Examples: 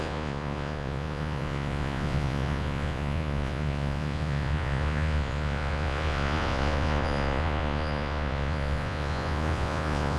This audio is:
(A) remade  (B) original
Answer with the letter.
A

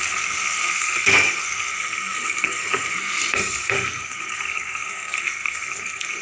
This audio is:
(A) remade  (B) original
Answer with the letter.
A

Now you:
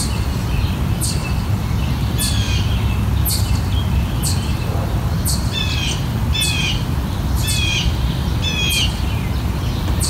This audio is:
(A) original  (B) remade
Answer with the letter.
A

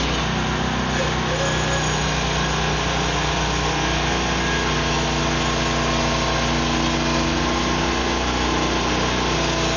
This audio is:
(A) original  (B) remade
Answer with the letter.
A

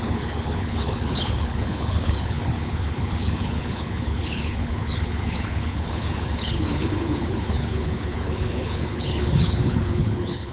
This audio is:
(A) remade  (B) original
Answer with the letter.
A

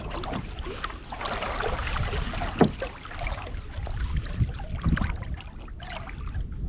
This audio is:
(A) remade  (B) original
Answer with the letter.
B